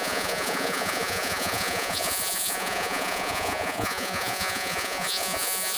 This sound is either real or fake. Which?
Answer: fake